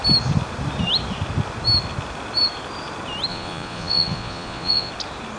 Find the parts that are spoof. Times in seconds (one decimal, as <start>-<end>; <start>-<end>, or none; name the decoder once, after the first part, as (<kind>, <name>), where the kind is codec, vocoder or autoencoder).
3.3-4.9 (vocoder, Vocos)